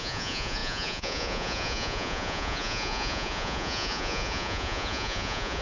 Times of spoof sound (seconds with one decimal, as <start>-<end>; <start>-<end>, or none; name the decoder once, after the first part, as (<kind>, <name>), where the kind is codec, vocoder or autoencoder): 0.0-5.6 (vocoder, Vocos)